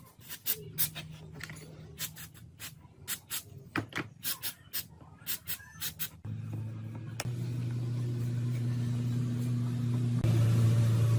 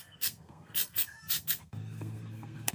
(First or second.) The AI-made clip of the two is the second